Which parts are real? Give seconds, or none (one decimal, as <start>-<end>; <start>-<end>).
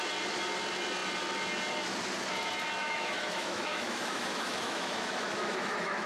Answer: 0.0-2.8